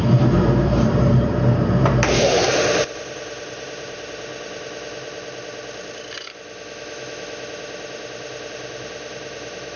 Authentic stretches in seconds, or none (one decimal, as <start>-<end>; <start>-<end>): 4.3-8.5